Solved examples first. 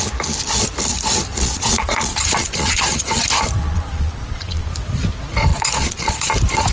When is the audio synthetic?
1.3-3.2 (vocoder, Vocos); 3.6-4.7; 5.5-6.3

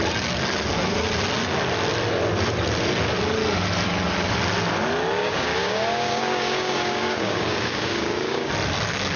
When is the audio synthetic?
5.2-8.5 (codec, DAC)

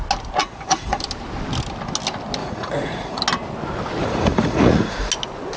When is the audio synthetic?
0.4-1.0 (vocoder, Vocos); 2.4-3.2; 4.0-5.1

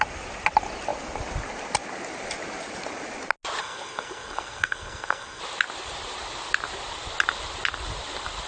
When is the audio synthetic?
3.6-5.4 (codec, SNAC)